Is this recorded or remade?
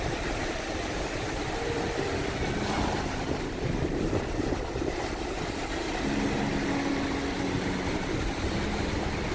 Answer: recorded